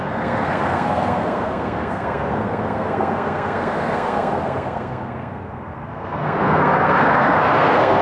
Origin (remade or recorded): remade